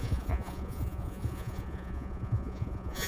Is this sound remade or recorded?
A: remade